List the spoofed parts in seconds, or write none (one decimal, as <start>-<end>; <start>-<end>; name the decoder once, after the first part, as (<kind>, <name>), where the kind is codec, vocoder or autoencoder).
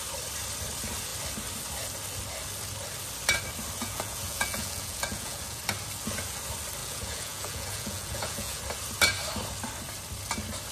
3.8-5.6 (vocoder, Vocos); 6.8-8.6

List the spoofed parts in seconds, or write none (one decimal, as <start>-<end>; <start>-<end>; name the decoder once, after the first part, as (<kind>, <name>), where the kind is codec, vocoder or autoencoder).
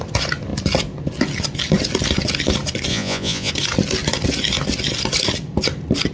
2.9-3.5 (vocoder, Vocos)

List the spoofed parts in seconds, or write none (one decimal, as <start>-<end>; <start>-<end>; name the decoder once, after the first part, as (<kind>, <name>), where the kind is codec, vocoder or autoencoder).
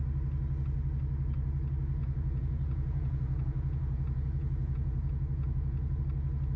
2.0-6.0 (vocoder, Vocos)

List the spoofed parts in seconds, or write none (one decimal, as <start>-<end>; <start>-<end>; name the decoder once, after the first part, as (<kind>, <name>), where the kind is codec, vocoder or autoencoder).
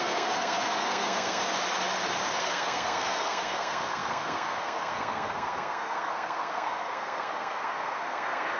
0.0-1.5 (codec, SNAC); 2.4-8.6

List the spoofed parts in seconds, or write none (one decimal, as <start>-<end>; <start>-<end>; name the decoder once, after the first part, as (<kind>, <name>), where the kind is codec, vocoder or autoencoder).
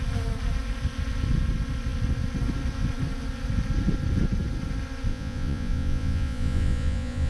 5.1-7.3 (vocoder, Vocos)